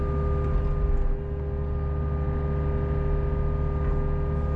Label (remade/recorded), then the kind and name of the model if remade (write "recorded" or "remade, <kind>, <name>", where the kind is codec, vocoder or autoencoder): recorded